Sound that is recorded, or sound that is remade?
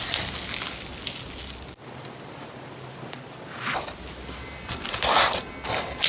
recorded